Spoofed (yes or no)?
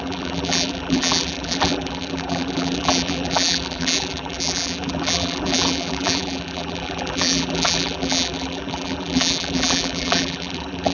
yes